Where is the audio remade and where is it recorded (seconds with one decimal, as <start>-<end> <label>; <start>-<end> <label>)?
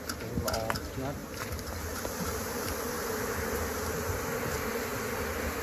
0.0-1.2 recorded; 1.2-4.3 remade; 4.3-5.6 recorded